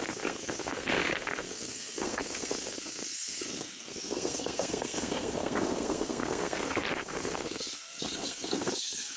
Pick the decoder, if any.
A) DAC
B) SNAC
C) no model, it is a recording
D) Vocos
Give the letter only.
B